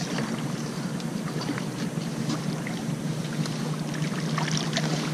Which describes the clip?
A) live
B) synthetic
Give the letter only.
A